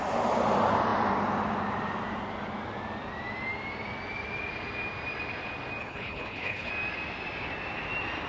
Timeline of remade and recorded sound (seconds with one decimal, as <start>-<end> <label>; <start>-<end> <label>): 0.0-5.8 recorded; 5.8-6.7 remade; 6.7-8.3 recorded